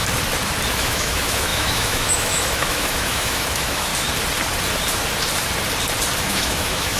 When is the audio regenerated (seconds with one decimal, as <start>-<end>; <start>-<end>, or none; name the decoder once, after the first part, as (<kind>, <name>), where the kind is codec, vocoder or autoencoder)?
0.7-3.9 (autoencoder, DAC-VAE); 6.2-7.0